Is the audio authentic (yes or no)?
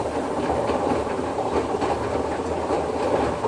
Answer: yes